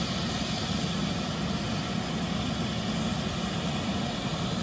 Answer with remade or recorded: recorded